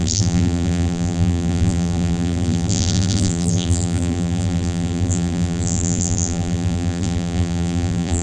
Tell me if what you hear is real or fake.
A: fake